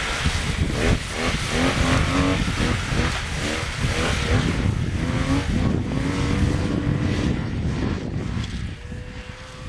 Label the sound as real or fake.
real